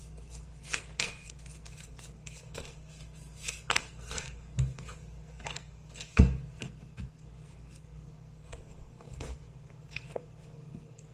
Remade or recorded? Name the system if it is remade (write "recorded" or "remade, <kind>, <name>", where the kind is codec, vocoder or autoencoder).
remade, codec, SNAC